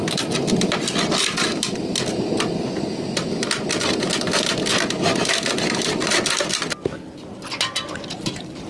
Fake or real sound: real